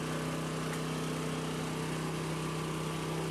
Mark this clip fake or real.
real